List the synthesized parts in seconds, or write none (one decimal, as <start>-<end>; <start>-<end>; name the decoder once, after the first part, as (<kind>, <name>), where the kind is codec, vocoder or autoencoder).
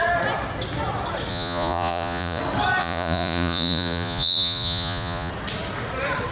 1.3-2.4 (vocoder, Vocos); 2.8-5.3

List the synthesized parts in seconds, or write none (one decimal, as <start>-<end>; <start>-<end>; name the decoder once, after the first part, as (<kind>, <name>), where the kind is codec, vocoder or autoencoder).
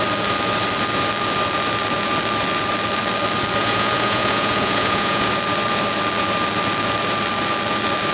3.6-5.3 (vocoder, Vocos)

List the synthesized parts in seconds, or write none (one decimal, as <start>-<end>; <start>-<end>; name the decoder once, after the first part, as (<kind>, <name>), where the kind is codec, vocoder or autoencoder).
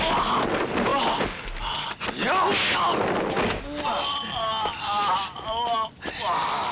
none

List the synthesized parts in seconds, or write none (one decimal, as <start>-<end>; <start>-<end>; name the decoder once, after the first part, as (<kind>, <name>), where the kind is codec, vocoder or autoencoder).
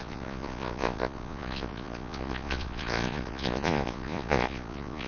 0.0-5.1 (vocoder, Vocos)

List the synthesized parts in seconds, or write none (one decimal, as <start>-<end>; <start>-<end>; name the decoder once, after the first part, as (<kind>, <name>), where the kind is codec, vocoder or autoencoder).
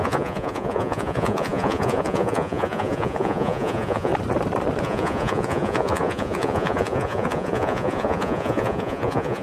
0.0-4.1 (vocoder, Vocos); 4.8-9.4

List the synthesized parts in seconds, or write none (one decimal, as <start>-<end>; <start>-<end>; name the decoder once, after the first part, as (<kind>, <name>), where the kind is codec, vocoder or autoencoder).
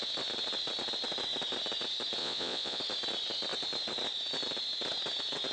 2.2-2.8 (vocoder, Vocos)